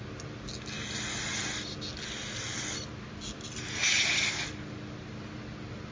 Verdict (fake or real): real